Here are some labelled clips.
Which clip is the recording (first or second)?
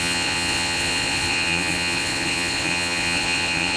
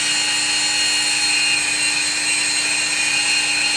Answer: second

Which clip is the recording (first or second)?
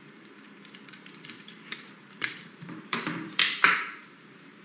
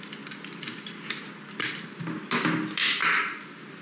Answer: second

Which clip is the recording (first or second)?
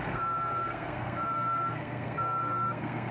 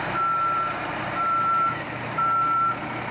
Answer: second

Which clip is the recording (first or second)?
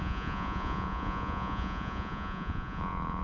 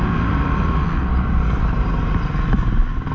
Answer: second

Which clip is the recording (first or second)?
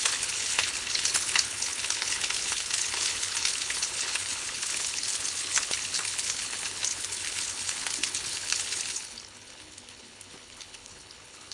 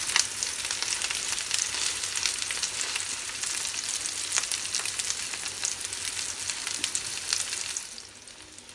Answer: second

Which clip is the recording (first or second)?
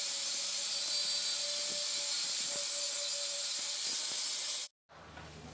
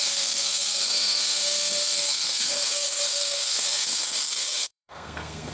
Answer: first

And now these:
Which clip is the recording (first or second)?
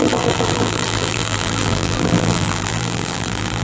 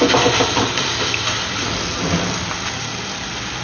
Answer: second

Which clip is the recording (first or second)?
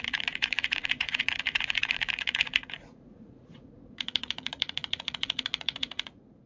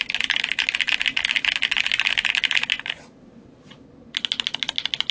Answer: second